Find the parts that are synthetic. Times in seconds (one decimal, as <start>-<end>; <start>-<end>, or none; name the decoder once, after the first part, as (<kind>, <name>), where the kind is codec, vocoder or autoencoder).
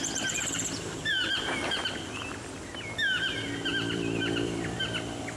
0.0-2.7 (vocoder, BigVGAN v2); 3.7-4.8